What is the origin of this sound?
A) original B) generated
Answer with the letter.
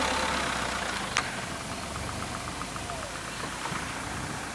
A